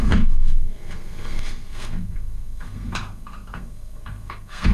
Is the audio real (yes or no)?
no